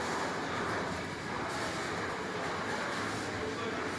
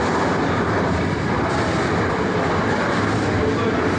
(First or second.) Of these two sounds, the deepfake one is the second